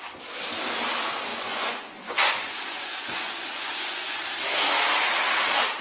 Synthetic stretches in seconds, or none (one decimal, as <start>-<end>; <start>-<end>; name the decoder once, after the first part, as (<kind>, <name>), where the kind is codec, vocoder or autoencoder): 1.3-4.2 (vocoder, Vocos)